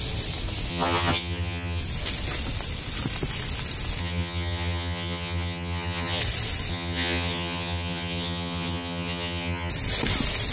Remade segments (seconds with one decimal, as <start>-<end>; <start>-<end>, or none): 0.7-1.8; 4.0-6.2; 6.7-9.7